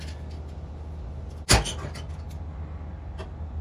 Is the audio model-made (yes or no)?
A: no